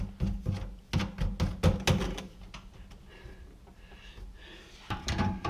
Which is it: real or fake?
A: real